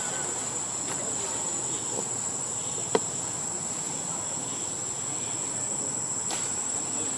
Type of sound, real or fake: real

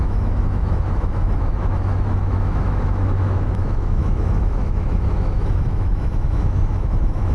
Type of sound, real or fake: fake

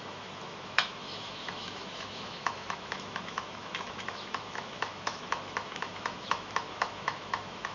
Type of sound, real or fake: fake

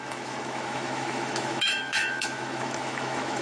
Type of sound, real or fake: fake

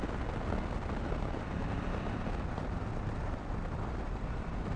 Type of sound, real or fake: real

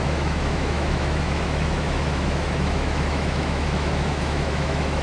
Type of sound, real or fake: fake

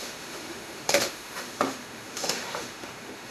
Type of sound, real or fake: fake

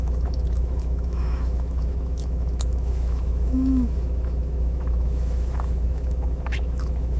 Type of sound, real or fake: fake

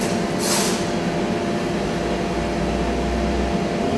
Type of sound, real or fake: real